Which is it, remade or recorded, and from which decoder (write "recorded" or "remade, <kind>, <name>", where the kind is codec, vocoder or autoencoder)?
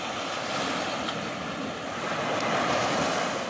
recorded